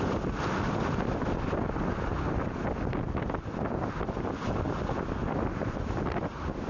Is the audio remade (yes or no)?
no